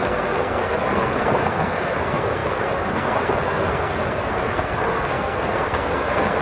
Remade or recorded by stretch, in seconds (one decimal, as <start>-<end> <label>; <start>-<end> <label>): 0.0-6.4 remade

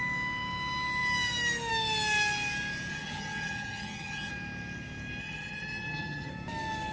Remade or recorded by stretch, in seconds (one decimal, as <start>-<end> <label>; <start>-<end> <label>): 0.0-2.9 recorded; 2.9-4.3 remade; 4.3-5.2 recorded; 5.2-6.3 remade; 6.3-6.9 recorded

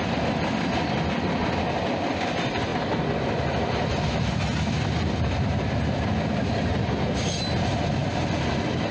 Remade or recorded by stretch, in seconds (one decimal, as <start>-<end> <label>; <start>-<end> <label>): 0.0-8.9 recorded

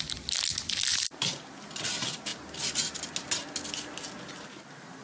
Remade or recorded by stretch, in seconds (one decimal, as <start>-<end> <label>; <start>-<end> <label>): 0.0-0.9 recorded; 0.9-1.6 remade; 1.6-5.0 recorded

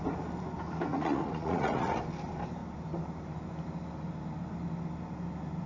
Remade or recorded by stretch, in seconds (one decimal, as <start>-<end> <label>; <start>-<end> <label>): 0.0-0.9 recorded; 0.9-2.0 remade; 2.0-5.7 recorded

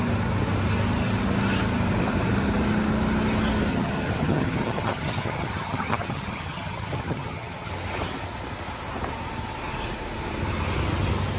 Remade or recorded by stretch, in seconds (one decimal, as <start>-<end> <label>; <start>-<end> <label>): 0.0-3.7 recorded; 3.7-7.7 remade; 7.7-11.4 recorded

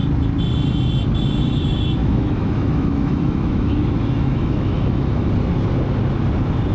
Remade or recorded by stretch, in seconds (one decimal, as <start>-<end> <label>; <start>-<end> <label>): 0.0-2.0 recorded; 2.0-5.3 remade; 5.3-6.7 recorded